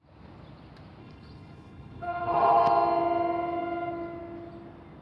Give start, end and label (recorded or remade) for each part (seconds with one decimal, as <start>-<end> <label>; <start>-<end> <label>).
0.0-1.0 recorded; 1.0-2.6 remade; 2.6-5.0 recorded